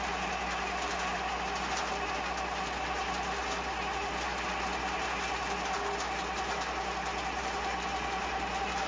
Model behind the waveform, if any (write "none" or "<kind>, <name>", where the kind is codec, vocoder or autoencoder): none